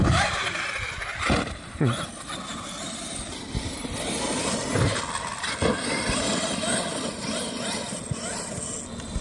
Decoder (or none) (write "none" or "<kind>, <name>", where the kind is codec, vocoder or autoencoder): none